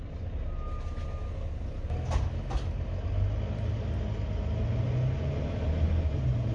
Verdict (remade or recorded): recorded